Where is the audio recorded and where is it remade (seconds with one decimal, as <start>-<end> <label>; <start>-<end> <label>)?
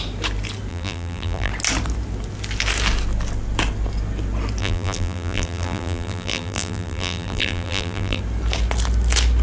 0.0-0.7 recorded; 0.7-1.5 remade; 1.5-4.6 recorded; 4.6-8.2 remade; 8.2-9.4 recorded